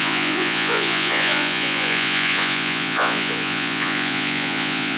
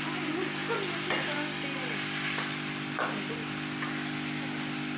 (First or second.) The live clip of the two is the second